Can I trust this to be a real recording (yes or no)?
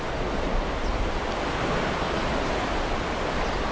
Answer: yes